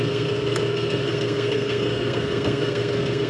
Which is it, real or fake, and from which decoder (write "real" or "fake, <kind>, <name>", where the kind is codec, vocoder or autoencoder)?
fake, codec, SNAC